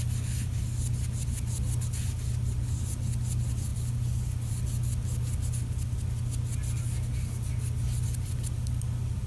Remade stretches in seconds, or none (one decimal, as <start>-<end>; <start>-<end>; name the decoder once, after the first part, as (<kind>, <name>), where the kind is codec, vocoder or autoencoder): none